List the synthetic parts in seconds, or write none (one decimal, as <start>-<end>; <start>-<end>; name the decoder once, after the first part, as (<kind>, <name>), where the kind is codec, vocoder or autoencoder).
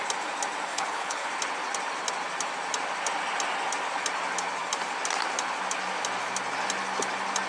0.7-1.3 (codec, HILCodec)